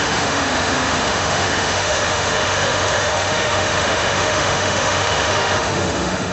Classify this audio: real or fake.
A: fake